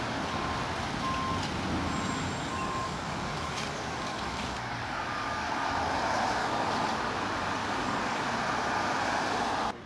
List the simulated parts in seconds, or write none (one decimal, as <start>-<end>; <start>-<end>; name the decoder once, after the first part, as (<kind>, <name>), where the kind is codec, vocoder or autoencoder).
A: 2.5-6.0 (codec, DAC); 6.4-7.0; 7.6-8.2